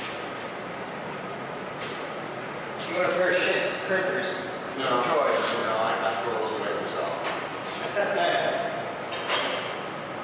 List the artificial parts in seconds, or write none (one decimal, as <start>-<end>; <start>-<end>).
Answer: 1.3-3.7